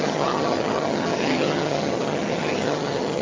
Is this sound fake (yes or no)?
yes